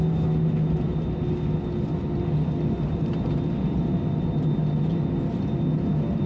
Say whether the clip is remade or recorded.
recorded